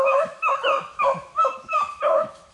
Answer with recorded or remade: remade